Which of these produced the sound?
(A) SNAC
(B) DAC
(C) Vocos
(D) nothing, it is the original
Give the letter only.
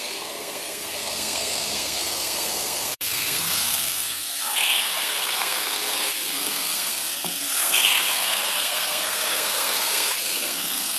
A